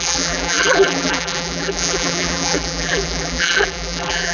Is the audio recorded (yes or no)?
no